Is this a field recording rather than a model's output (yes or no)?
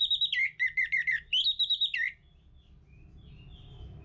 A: yes